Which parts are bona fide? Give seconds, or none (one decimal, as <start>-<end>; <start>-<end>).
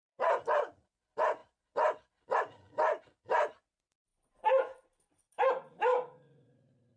none